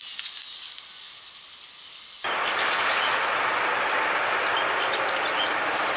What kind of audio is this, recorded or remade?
recorded